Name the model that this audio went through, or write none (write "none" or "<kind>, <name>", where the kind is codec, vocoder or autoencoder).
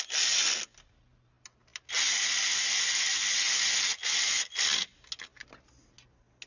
none